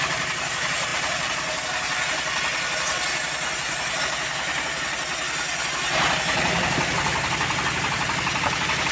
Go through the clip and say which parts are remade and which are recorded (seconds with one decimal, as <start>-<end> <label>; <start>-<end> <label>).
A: 0.0-8.9 recorded